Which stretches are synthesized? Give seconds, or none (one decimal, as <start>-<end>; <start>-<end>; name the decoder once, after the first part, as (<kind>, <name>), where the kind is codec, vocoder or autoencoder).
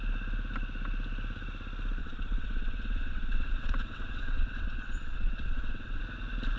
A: 2.0-6.0 (vocoder, WaveNeXt)